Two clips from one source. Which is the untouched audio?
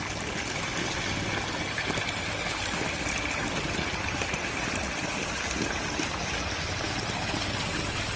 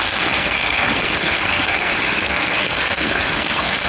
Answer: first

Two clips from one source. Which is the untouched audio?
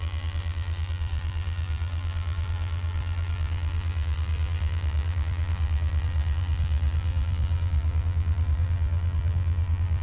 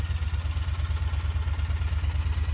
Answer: second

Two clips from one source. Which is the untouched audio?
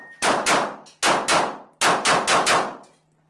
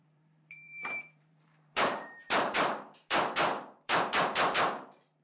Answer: first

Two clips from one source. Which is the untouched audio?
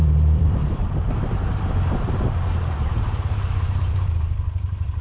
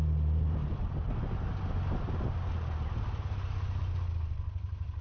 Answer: second